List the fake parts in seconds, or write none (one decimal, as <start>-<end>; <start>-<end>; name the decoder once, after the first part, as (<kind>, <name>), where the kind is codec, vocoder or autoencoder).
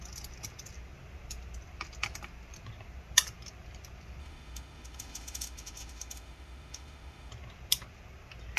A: 4.2-7.3 (autoencoder, DAC-VAE)